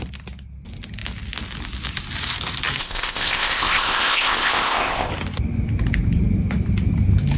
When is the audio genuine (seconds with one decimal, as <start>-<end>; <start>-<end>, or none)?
0.0-2.8; 5.1-7.4